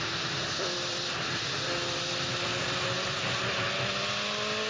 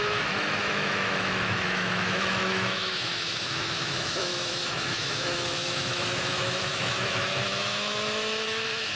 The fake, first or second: second